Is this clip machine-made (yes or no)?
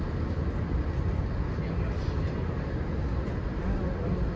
no